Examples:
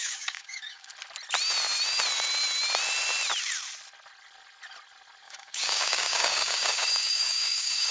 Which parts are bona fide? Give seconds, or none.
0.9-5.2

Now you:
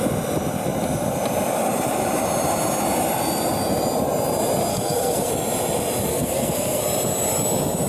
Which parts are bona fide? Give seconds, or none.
0.0-4.7; 5.3-6.1; 6.8-7.9

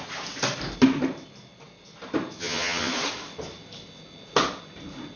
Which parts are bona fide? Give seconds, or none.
0.0-2.4; 2.9-5.2

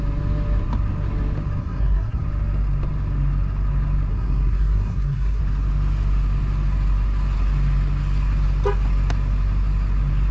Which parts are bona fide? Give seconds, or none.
0.0-1.6; 2.2-4.1; 5.4-10.3

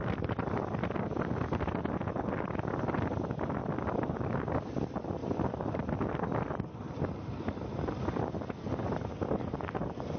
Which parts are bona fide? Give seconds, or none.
0.0-10.2

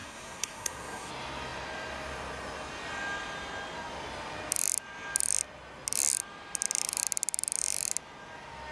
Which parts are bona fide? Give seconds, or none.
1.1-8.7

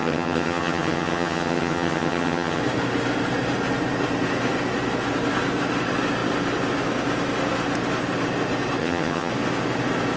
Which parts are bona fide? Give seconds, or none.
2.6-8.8; 9.3-10.2